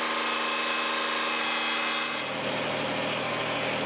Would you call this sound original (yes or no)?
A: yes